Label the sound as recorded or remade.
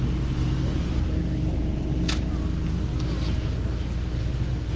recorded